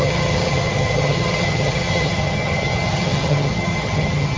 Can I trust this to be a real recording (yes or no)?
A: no